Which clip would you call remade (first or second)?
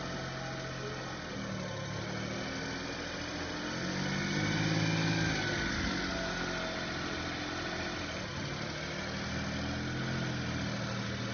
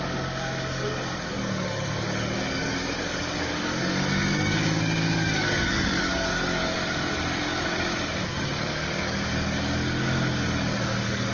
second